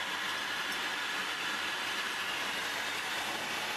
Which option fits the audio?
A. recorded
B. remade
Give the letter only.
A